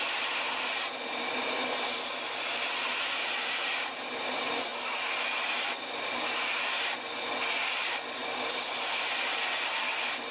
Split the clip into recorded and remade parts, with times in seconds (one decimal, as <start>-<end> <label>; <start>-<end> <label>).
0.0-10.3 recorded